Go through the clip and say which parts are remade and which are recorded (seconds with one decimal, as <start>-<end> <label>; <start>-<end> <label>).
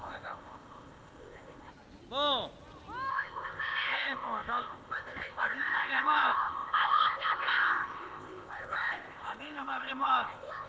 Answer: 0.0-1.7 remade; 1.7-3.1 recorded; 3.1-10.7 remade